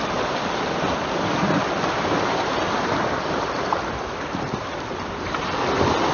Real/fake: real